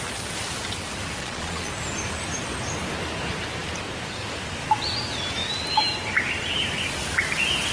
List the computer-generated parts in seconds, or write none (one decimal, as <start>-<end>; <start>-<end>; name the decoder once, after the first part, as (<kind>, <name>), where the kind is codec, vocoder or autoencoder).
1.2-1.7 (vocoder, Vocos)